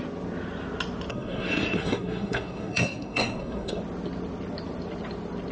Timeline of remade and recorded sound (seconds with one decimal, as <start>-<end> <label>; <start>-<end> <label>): 0.0-1.1 recorded; 1.1-3.8 remade; 3.8-5.5 recorded